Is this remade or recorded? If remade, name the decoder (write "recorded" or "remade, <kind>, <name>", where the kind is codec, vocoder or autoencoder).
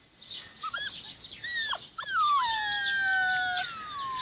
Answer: recorded